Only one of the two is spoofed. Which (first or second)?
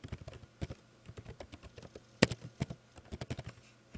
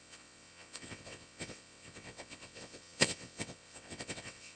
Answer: second